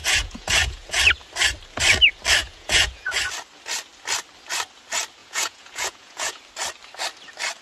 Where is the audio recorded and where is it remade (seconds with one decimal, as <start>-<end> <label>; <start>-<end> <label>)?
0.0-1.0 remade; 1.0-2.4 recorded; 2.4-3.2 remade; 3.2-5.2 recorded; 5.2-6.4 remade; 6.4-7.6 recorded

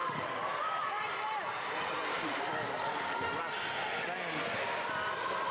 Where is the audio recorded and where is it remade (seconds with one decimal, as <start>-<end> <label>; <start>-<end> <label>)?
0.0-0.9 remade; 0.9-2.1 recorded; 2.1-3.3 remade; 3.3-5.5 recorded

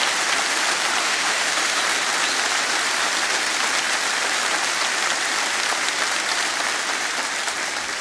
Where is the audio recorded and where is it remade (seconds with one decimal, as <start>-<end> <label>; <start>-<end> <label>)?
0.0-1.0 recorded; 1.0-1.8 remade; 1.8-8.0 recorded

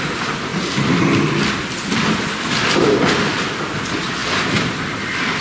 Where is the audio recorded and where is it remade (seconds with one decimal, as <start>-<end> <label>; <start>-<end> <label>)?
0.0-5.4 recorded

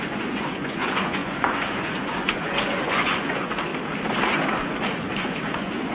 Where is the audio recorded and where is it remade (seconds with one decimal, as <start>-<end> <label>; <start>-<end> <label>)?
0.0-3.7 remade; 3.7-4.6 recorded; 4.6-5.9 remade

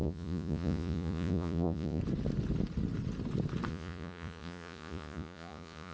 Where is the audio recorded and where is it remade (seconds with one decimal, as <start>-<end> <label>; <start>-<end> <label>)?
0.0-2.0 remade; 2.0-3.7 recorded; 3.7-5.9 remade

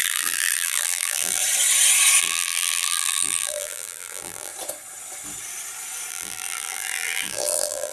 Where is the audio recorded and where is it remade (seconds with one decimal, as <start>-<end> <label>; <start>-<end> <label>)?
0.0-1.4 remade; 1.4-2.2 recorded; 2.2-4.5 remade; 4.5-6.1 recorded; 6.1-7.9 remade

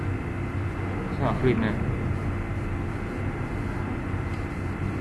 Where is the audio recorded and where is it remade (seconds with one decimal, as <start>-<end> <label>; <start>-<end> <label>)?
0.0-5.0 remade